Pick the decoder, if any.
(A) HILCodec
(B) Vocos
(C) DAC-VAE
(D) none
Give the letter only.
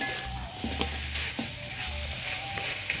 D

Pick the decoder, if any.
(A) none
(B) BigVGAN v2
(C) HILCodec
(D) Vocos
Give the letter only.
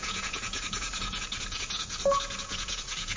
D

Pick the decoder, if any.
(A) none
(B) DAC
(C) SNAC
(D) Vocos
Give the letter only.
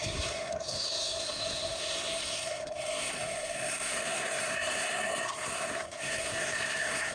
C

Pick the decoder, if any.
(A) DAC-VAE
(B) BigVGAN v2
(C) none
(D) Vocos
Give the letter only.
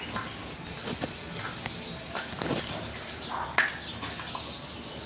C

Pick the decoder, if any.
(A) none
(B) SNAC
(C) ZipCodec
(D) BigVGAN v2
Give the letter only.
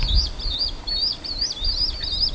A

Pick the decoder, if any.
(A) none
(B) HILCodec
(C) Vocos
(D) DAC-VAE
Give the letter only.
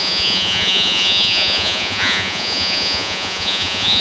C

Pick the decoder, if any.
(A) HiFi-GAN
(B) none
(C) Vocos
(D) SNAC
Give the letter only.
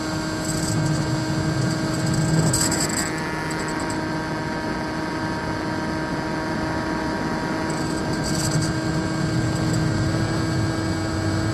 B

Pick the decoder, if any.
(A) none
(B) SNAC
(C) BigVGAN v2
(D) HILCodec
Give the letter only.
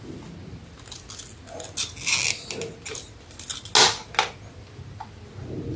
A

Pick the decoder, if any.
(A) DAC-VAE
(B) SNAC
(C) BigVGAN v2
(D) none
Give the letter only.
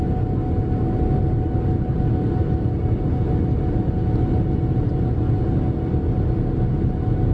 D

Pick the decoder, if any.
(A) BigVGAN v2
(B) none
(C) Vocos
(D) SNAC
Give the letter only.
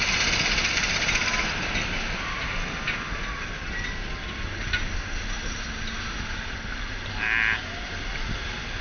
B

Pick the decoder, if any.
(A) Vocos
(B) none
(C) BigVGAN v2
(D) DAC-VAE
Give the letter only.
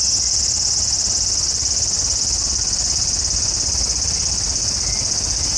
B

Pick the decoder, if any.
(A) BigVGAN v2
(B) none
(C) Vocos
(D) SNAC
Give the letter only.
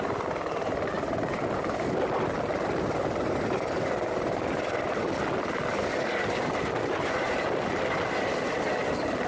B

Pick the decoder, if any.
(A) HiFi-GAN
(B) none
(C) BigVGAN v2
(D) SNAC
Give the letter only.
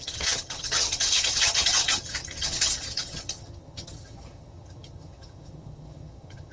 A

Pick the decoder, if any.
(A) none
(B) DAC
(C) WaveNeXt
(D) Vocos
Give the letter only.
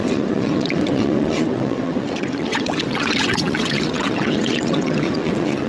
C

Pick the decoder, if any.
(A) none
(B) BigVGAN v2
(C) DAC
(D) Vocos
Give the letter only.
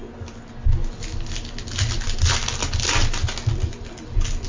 A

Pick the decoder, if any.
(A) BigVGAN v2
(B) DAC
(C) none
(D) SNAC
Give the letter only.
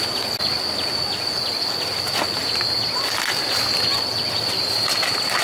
C